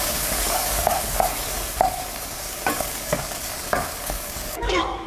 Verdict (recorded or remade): remade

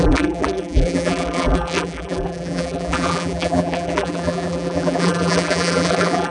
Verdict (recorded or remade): remade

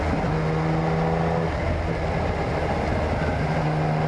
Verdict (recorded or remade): recorded